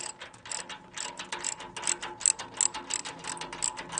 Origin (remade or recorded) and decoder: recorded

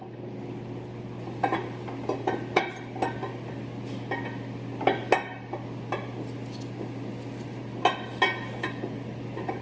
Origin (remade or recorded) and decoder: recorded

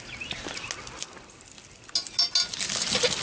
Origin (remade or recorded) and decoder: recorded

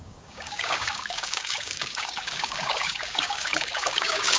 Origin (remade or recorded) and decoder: remade, codec, DAC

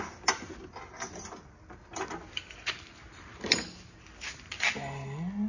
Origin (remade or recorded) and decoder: recorded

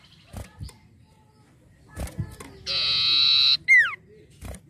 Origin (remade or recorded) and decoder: recorded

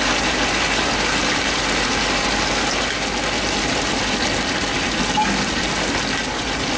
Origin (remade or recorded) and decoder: recorded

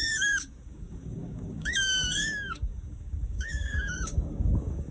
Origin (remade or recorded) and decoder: remade, codec, DAC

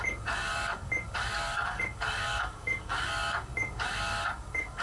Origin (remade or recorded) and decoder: remade, codec, DAC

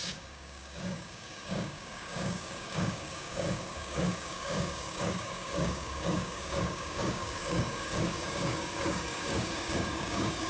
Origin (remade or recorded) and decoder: remade, codec, DAC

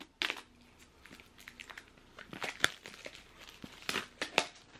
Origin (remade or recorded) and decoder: recorded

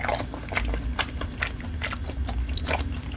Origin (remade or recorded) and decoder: recorded